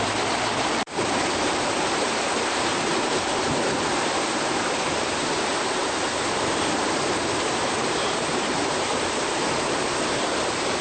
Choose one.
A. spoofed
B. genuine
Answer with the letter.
A